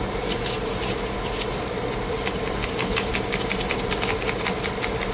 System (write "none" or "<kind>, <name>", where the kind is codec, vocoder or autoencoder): none